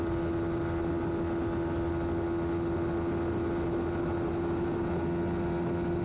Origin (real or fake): real